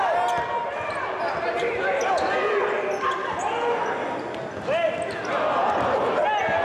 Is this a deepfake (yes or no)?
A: no